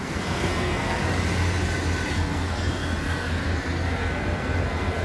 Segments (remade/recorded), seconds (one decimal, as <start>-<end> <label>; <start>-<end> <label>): 0.0-1.0 remade; 1.0-2.1 recorded; 2.1-5.0 remade